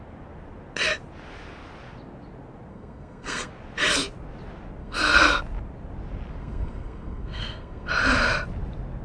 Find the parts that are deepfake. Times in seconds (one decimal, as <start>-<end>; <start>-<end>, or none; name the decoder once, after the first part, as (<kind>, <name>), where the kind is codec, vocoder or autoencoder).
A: 2.7-3.5 (codec, SNAC); 4.8-5.4; 6.4-7.9